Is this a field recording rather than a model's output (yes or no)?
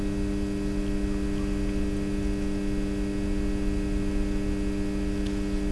yes